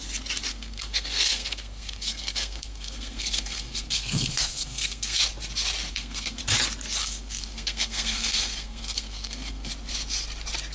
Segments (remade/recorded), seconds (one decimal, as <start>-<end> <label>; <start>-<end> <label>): 0.0-0.5 recorded; 0.5-5.2 remade; 5.2-5.9 recorded; 5.9-6.4 remade; 6.4-7.0 recorded; 7.0-9.7 remade; 9.7-10.7 recorded